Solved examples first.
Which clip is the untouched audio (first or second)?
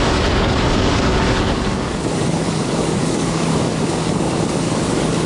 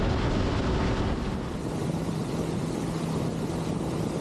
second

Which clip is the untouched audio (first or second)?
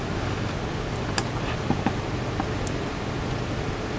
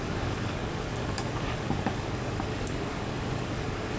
first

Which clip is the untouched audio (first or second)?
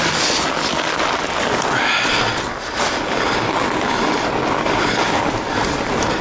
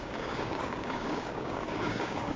first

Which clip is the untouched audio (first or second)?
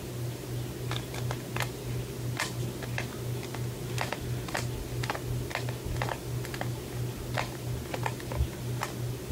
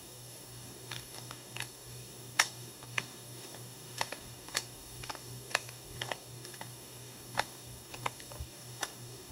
first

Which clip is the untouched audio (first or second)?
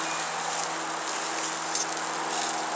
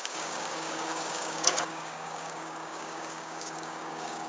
first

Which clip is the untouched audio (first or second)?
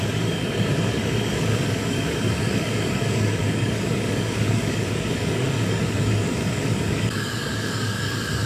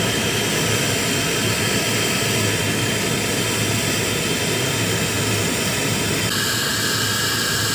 second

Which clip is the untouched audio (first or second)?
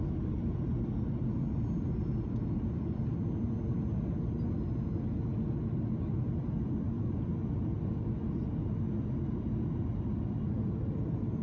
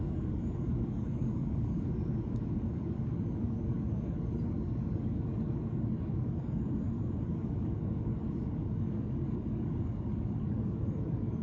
first